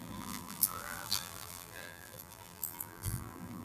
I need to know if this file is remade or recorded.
remade